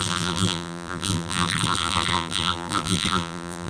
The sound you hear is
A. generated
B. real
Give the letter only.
A